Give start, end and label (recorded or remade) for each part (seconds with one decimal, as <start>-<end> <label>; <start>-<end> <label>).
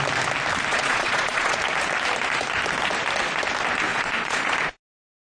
0.0-0.7 recorded; 0.7-1.6 remade; 1.6-3.9 recorded; 3.9-4.5 remade; 4.5-5.2 recorded